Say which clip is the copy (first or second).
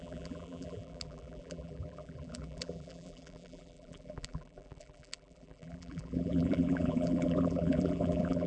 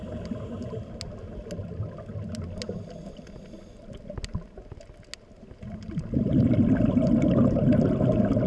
first